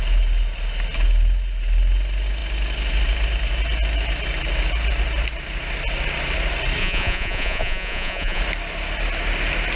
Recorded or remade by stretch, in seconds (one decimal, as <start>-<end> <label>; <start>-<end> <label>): 0.0-6.8 recorded; 6.8-8.4 remade; 8.4-9.8 recorded